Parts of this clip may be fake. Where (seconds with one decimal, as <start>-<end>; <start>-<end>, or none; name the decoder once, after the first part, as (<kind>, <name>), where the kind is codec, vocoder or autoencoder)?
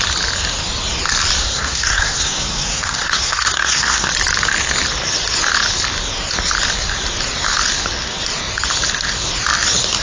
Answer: 1.4-4.1 (codec, SNAC)